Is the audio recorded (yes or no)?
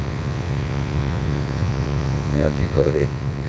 no